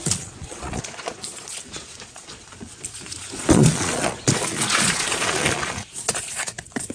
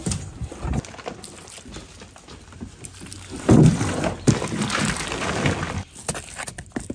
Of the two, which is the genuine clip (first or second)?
second